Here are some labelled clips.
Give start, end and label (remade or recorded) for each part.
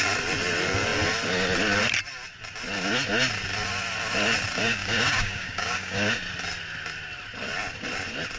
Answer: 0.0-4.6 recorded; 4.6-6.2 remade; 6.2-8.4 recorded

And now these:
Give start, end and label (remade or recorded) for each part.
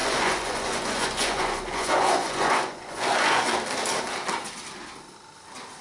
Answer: 0.0-3.5 remade; 3.5-5.8 recorded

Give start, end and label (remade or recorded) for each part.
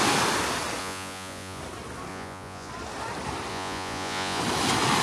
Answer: 0.0-0.8 recorded; 0.8-1.6 remade; 1.6-2.1 recorded; 2.1-2.7 remade; 2.7-3.5 recorded; 3.5-4.4 remade; 4.4-5.0 recorded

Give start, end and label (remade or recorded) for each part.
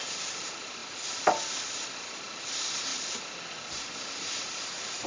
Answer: 0.0-0.8 remade; 0.8-2.5 recorded; 2.5-2.9 remade; 2.9-3.7 recorded; 3.7-5.1 remade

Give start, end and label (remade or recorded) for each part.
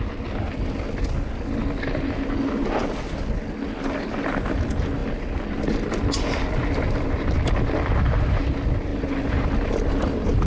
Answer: 0.0-10.5 recorded